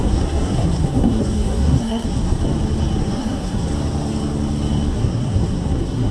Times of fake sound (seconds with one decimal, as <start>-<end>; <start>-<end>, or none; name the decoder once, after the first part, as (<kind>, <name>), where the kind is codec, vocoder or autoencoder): 0.0-2.4 (codec, SNAC); 3.0-3.7; 4.9-6.1